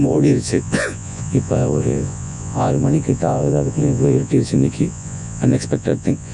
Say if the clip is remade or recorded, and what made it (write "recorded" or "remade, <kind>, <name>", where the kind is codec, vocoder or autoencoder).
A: remade, vocoder, Vocos